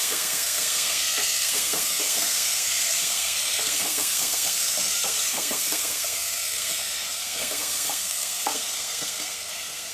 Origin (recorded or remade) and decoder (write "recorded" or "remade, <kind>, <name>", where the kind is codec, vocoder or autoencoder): remade, codec, SNAC